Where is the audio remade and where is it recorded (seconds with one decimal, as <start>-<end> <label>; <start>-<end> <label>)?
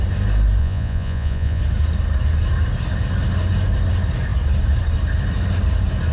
0.0-0.6 recorded; 0.6-1.6 remade; 1.6-6.1 recorded